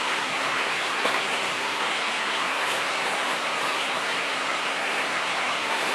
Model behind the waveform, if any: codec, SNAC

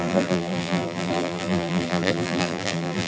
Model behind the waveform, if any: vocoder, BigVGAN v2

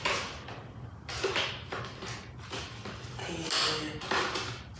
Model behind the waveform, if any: none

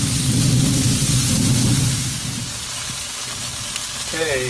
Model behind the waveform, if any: none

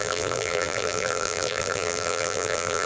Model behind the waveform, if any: vocoder, BigVGAN v2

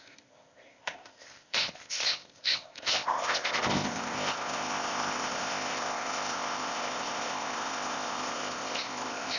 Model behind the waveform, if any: codec, ZipCodec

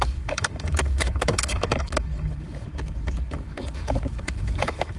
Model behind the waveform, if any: codec, DAC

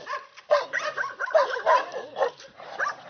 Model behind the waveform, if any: vocoder, BigVGAN v2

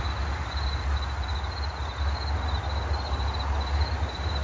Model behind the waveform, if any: none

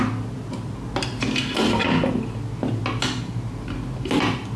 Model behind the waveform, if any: none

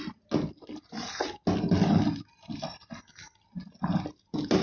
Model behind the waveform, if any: none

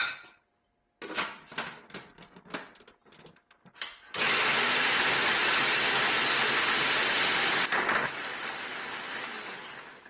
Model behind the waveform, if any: none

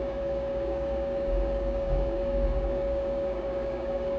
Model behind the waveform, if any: codec, DAC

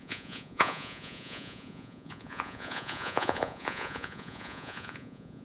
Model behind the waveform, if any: vocoder, Vocos